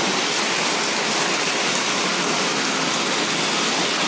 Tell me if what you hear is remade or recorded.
recorded